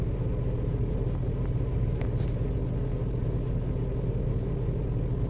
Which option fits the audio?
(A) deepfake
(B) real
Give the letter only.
B